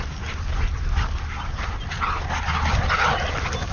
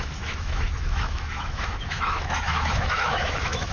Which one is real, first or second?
first